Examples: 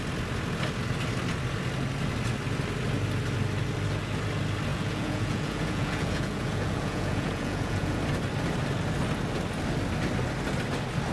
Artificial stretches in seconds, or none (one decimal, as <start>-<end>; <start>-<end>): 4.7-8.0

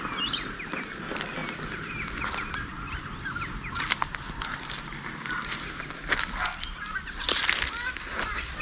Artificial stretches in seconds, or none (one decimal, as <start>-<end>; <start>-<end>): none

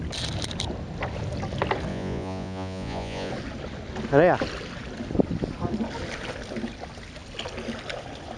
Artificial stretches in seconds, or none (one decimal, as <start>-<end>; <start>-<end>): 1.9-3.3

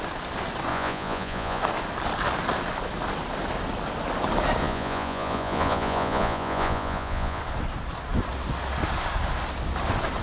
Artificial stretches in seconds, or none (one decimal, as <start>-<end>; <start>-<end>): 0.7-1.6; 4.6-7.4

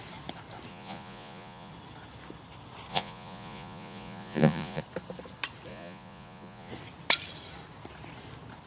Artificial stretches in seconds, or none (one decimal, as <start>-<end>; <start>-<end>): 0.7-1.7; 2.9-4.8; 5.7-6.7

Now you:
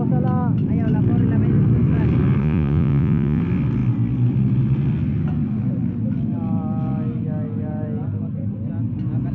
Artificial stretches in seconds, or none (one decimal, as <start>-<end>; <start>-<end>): 2.4-3.4